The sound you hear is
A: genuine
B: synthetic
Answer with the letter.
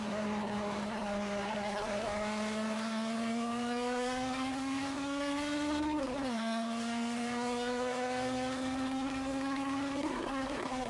B